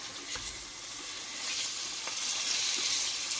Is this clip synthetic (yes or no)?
no